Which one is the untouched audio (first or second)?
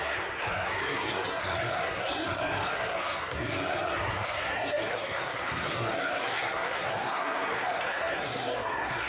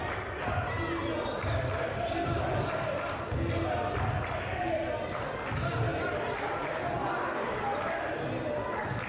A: second